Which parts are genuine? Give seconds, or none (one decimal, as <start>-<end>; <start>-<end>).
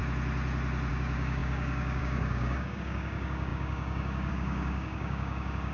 0.0-0.9